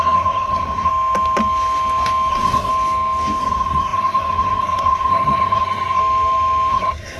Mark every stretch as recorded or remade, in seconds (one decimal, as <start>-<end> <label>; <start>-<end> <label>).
0.0-0.9 remade; 0.9-2.3 recorded; 2.3-2.7 remade; 2.7-3.4 recorded; 3.4-6.0 remade; 6.0-6.7 recorded; 6.7-7.2 remade